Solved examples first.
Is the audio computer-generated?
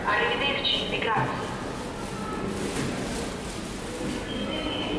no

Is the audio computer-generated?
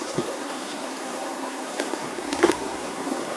yes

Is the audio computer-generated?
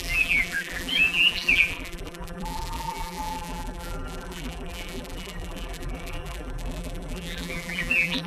yes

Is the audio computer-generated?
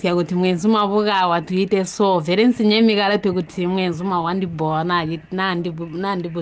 no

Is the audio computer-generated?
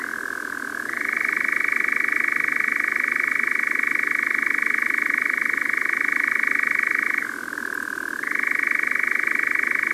no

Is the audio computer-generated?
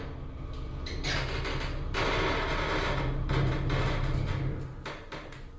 no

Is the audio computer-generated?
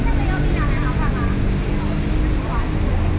no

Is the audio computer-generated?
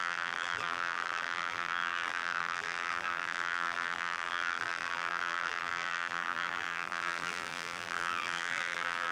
yes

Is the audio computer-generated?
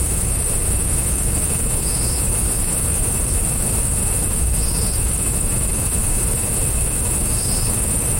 yes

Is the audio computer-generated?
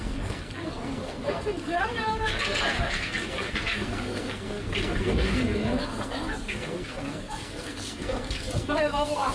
yes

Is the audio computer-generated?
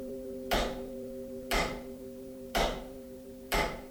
yes